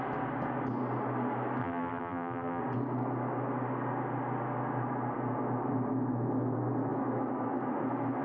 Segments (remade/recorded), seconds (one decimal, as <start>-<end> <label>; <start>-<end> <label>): 0.0-1.6 recorded; 1.6-2.6 remade; 2.6-8.2 recorded